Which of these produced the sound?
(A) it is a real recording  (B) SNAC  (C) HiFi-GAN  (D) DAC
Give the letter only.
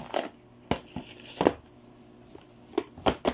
A